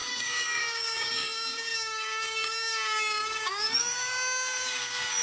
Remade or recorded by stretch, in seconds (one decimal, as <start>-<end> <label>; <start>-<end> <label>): 0.0-5.2 remade